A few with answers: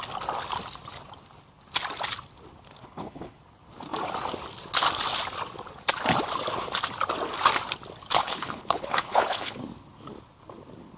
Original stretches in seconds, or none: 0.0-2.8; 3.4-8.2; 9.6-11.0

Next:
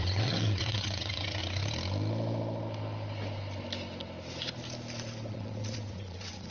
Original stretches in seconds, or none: 1.4-5.3